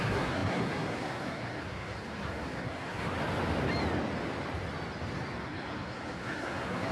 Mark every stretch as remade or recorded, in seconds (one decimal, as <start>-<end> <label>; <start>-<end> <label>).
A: 0.0-3.1 remade; 3.1-5.4 recorded; 5.4-6.9 remade